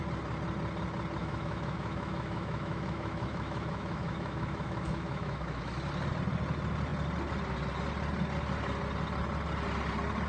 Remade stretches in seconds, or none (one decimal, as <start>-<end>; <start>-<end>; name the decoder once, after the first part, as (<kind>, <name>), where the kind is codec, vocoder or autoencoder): 1.2-5.7 (autoencoder, DAC-VAE)